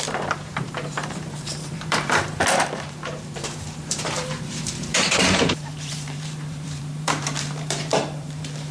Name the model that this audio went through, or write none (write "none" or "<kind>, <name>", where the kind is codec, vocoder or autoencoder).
vocoder, BigVGAN v2